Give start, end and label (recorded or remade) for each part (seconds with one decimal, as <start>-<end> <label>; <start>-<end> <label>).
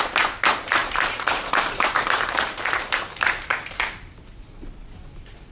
0.0-0.8 recorded; 0.8-4.1 remade; 4.1-5.5 recorded